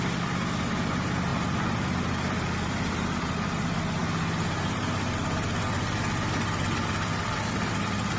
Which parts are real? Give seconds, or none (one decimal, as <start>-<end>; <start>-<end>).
4.0-6.8